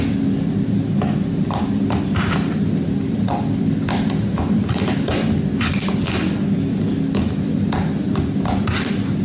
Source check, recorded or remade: recorded